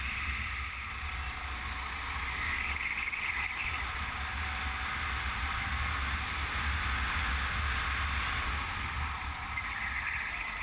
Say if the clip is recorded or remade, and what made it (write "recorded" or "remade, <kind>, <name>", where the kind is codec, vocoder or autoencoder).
recorded